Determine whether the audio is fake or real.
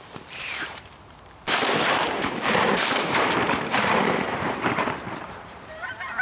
fake